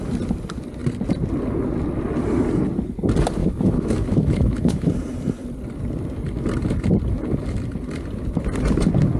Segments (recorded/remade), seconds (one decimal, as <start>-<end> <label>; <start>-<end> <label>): 0.0-3.4 recorded; 3.4-4.9 remade; 4.9-9.2 recorded